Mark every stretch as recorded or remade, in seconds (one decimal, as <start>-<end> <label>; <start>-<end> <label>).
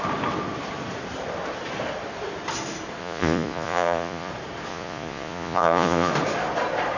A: 0.0-3.0 recorded; 3.0-4.3 remade; 4.3-4.7 recorded; 4.7-6.1 remade; 6.1-7.0 recorded